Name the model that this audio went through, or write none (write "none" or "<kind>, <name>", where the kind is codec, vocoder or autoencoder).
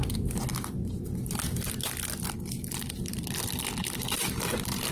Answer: none